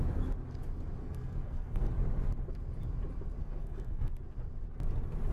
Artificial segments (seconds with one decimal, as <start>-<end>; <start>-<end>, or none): 1.0-1.9; 3.4-4.1